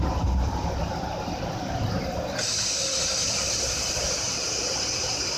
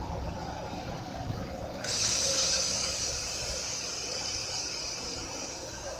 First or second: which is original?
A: first